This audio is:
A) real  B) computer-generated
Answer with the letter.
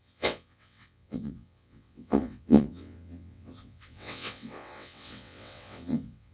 B